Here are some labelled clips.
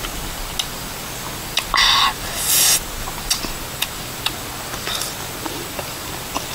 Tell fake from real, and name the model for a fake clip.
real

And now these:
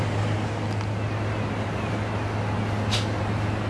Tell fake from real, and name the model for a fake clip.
real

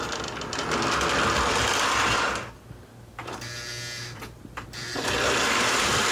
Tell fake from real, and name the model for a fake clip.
real